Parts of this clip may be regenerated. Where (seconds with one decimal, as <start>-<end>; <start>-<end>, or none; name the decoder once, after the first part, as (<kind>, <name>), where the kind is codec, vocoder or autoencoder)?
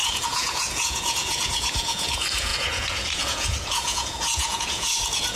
0.0-5.4 (vocoder, Vocos)